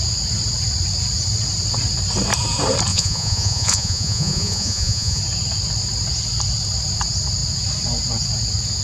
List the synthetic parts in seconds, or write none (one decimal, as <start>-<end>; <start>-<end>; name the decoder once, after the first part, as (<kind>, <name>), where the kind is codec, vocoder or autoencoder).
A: 2.9-5.2 (vocoder, Vocos)